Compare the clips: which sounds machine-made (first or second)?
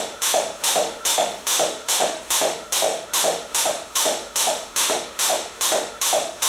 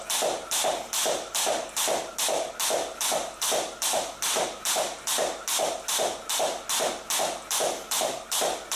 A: first